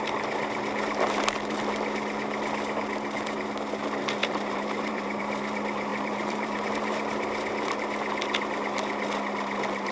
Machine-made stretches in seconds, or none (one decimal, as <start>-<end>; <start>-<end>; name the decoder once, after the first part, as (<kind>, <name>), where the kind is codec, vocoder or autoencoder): 4.2-5.2 (vocoder, BigVGAN v2); 5.9-6.7